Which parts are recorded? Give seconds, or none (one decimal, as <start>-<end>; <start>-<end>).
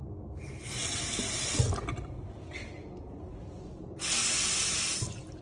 0.0-5.4